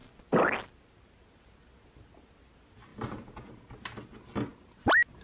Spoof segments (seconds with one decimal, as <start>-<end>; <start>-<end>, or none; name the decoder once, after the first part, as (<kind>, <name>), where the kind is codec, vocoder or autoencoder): none